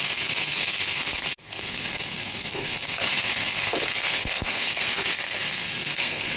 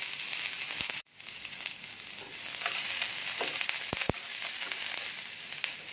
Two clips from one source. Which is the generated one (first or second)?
first